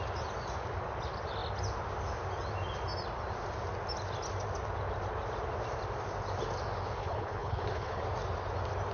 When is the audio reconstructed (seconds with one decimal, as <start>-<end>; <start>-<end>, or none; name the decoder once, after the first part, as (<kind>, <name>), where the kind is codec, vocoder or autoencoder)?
7.0-8.0 (codec, HILCodec)